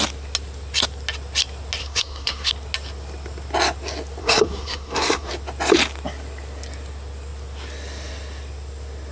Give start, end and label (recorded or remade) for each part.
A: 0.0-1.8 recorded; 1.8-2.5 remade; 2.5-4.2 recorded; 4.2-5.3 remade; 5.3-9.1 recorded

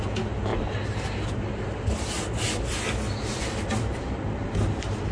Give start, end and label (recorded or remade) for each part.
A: 0.0-5.1 recorded

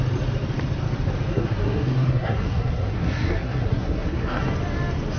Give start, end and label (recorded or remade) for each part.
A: 0.0-1.3 recorded; 1.3-4.4 remade; 4.4-5.2 recorded

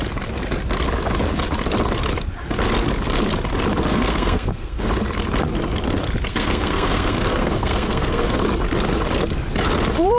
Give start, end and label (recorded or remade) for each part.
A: 0.0-3.9 recorded; 3.9-4.9 remade; 4.9-6.3 recorded; 6.3-8.4 remade; 8.4-10.2 recorded

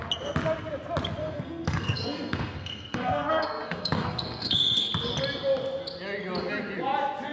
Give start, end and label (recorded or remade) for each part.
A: 0.0-1.2 recorded; 1.2-4.9 remade; 4.9-7.3 recorded